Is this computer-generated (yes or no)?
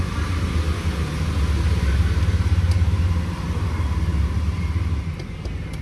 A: yes